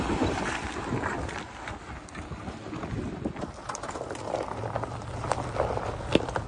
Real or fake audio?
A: real